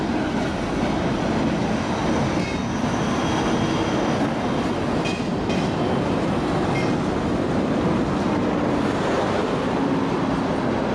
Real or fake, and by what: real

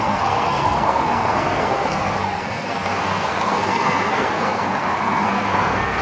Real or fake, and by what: fake, codec, SNAC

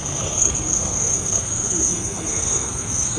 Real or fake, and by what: fake, codec, SNAC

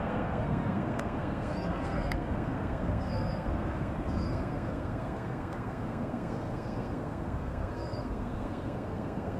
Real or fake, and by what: fake, codec, SNAC